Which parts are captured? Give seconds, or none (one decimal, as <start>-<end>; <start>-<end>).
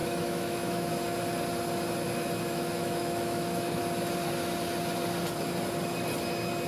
0.9-2.5; 3.8-6.7